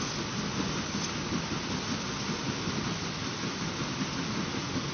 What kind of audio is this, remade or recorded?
recorded